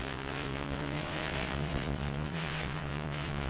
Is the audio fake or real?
fake